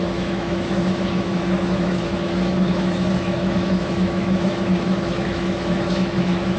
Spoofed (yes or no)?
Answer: yes